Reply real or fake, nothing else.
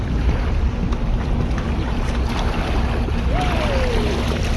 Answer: real